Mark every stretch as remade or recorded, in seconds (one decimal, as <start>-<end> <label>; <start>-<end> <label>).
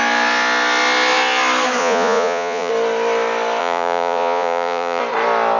0.0-1.8 recorded; 1.8-2.7 remade; 2.7-3.6 recorded; 3.6-5.0 remade; 5.0-5.6 recorded